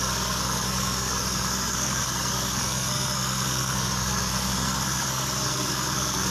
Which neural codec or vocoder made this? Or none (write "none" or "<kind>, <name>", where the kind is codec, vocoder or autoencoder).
codec, SNAC